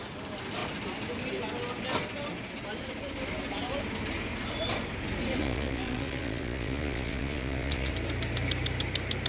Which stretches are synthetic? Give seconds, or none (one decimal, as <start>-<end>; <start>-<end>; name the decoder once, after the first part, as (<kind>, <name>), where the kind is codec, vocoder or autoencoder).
5.4-7.9 (vocoder, Vocos)